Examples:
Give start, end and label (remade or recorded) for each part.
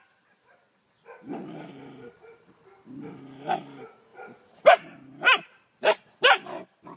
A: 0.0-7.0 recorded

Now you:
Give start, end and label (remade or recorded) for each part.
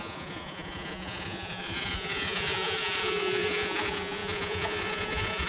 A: 0.0-5.5 remade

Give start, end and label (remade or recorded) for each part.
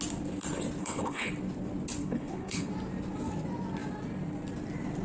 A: 0.0-0.8 recorded; 0.8-1.3 remade; 1.3-2.0 recorded; 2.0-2.7 remade; 2.7-5.0 recorded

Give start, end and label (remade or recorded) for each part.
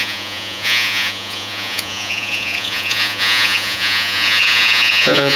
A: 0.0-5.4 remade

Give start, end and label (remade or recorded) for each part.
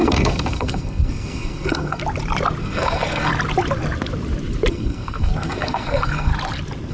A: 0.0-2.0 remade; 2.0-2.6 recorded; 2.6-3.3 remade; 3.3-4.7 recorded; 4.7-6.3 remade; 6.3-6.9 recorded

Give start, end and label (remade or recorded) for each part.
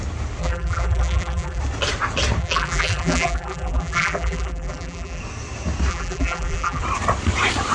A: 0.0-0.4 recorded; 0.4-1.6 remade; 1.6-2.4 recorded; 2.4-5.2 remade; 5.2-5.9 recorded; 5.9-6.8 remade; 6.8-7.7 recorded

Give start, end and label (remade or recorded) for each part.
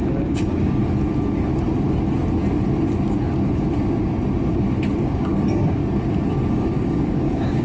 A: 0.0-0.8 remade; 0.8-5.0 recorded; 5.0-5.8 remade; 5.8-6.5 recorded; 6.5-7.6 remade